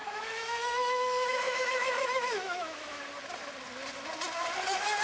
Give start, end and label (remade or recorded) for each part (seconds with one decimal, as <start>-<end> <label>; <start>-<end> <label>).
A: 0.0-3.0 remade; 3.0-5.0 recorded